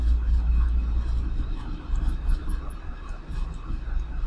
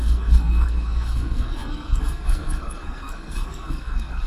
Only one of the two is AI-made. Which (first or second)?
second